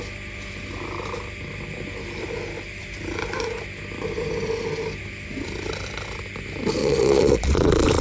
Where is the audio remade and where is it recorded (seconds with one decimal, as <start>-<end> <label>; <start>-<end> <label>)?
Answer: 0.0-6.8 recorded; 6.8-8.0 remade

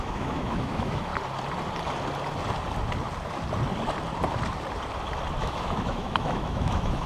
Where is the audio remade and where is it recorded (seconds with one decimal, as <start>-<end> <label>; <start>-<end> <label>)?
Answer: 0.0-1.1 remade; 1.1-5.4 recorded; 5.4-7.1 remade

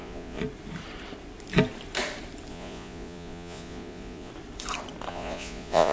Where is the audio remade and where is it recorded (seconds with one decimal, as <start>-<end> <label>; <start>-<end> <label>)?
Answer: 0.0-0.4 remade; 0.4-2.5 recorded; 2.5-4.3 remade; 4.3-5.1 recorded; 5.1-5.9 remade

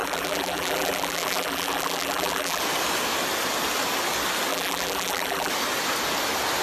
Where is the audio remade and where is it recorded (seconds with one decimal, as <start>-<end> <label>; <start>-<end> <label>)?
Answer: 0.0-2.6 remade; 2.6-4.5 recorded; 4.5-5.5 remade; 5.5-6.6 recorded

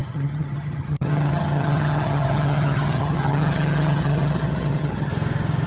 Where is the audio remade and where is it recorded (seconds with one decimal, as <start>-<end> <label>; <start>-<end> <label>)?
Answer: 0.0-5.1 remade; 5.1-5.7 recorded

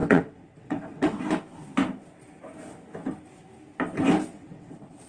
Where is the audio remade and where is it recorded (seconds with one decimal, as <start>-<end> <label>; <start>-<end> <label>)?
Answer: 0.0-1.2 remade; 1.2-4.3 recorded; 4.3-5.1 remade

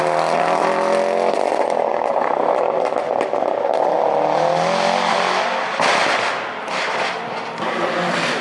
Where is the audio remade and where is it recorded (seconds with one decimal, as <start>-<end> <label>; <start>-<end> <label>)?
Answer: 0.0-8.4 recorded